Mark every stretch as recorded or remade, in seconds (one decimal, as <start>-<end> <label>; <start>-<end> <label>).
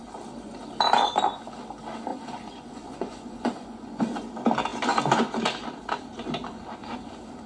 0.0-2.1 recorded; 2.1-4.0 remade; 4.0-7.5 recorded